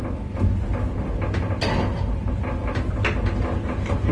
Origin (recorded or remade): recorded